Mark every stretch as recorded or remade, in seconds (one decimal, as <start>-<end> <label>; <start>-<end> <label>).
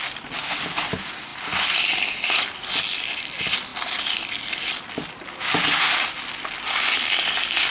0.0-7.7 recorded